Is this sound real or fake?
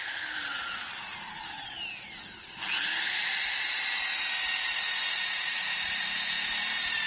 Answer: fake